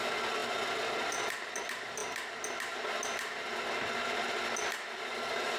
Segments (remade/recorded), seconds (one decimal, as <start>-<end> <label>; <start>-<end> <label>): 0.0-5.6 recorded